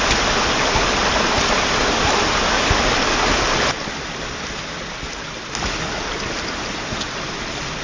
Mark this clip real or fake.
real